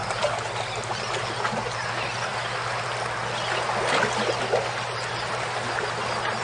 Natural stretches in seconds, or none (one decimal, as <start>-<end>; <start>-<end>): 0.0-6.4